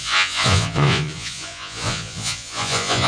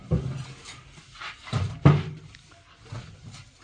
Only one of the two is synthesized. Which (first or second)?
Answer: first